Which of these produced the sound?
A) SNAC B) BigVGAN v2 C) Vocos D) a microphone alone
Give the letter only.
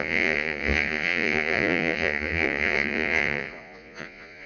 C